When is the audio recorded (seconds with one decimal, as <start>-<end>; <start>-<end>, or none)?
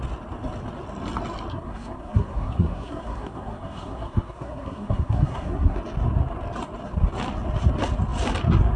0.0-1.5; 5.8-8.8